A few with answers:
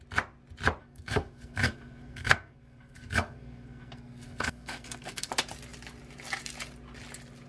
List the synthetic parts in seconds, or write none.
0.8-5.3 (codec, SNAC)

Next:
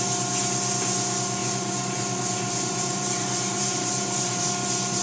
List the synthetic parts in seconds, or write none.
1.4-4.4 (vocoder, BigVGAN v2)

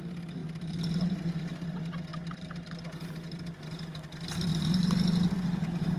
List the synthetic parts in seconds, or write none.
0.4-1.0 (vocoder, BigVGAN v2); 2.1-2.8; 4.5-6.0

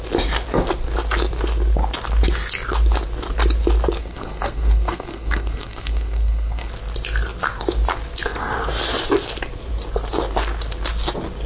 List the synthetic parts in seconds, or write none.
4.0-6.7 (codec, SNAC)

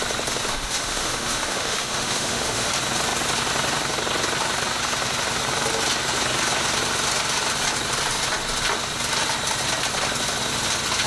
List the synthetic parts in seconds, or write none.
0.5-2.7 (autoencoder, DAC-VAE)

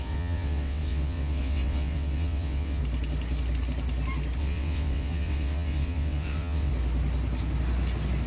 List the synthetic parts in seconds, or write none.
0.0-2.8 (vocoder, WaveNeXt); 4.4-6.7

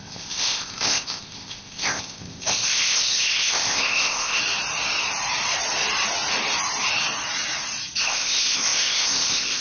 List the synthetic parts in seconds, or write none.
0.0-4.4 (codec, ZipCodec); 8.0-9.6

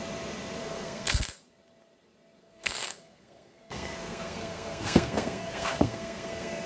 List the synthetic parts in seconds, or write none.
0.6-1.4 (codec, SNAC); 2.4-6.7